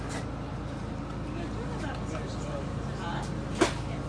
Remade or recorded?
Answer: recorded